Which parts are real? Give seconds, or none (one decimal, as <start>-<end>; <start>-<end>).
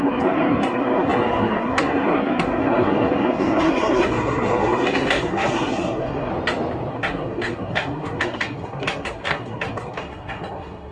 6.3-6.9